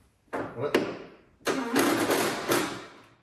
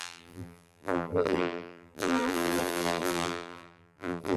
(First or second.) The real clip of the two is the first